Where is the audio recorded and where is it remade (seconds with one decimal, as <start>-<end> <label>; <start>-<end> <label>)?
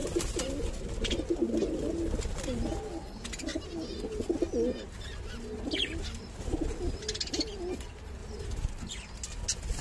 0.0-8.2 recorded; 8.2-8.7 remade; 8.7-9.8 recorded